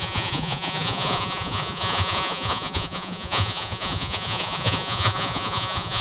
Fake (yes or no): yes